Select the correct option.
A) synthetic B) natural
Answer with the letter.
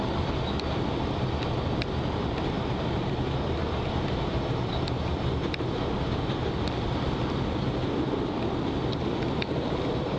B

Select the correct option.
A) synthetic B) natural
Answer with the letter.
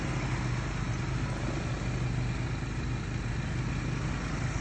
B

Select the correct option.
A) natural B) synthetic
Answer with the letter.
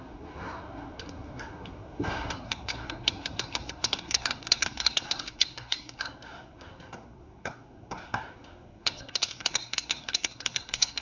B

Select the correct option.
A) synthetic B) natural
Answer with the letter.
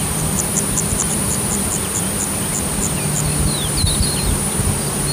B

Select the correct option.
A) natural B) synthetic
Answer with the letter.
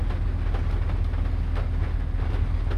A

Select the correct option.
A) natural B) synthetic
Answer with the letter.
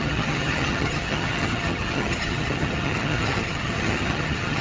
B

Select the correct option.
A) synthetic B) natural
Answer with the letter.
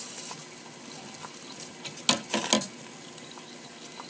B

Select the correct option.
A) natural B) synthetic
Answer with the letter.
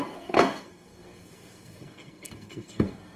B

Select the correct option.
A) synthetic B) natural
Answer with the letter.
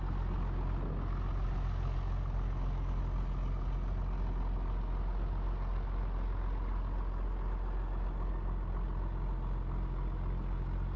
B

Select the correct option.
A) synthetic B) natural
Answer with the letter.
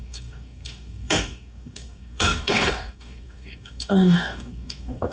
A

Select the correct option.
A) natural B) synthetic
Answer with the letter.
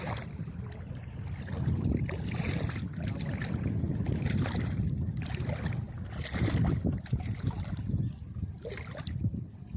A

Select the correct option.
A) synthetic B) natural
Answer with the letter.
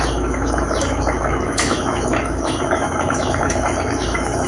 A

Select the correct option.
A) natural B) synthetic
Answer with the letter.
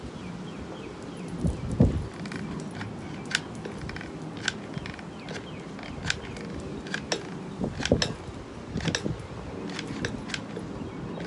A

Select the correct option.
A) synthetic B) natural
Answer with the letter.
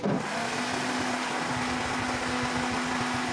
B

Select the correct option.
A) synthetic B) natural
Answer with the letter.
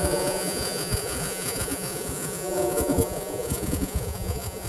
A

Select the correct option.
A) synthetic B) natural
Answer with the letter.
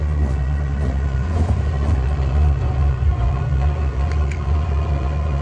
A